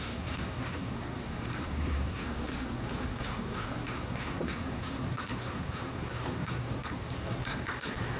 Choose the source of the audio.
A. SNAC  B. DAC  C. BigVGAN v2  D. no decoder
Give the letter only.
A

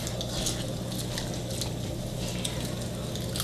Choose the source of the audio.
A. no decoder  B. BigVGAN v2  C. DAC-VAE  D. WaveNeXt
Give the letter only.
A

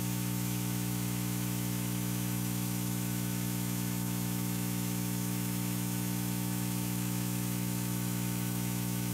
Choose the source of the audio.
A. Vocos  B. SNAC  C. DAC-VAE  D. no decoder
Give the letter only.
C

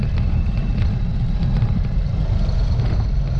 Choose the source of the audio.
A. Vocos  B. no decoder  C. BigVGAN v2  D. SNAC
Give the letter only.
C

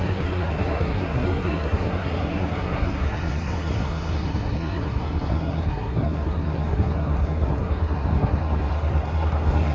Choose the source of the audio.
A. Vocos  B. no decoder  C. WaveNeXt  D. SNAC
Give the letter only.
D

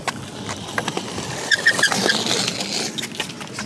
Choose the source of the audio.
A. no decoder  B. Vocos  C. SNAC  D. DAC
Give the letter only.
A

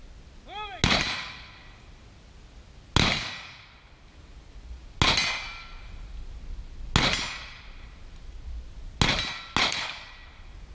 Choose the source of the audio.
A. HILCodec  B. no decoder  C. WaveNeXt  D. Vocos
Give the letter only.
B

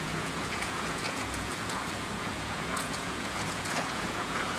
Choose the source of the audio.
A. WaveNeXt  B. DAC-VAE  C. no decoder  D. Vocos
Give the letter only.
D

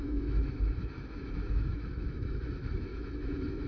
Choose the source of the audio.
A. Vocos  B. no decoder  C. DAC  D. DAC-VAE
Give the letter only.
D